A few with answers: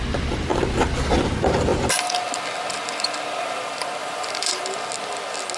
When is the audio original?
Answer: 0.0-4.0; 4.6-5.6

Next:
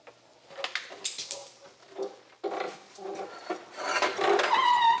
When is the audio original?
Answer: 0.0-5.0